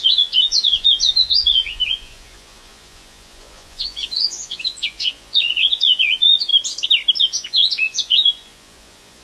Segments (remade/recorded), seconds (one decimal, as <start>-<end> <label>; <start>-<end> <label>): 0.0-6.5 remade; 6.5-7.2 recorded; 7.2-9.2 remade